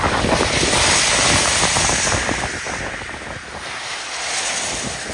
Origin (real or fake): real